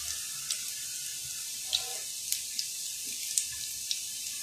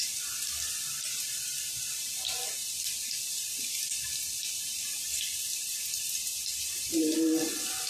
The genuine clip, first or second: first